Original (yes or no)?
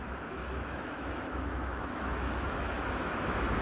no